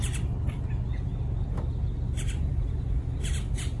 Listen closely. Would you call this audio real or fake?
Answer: real